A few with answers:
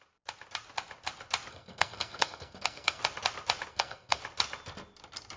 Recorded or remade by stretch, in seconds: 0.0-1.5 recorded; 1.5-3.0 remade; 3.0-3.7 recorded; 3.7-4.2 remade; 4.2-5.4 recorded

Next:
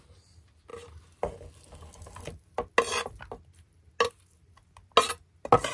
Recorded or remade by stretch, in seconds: 0.0-5.7 recorded